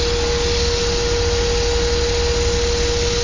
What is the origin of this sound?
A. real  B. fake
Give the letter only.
A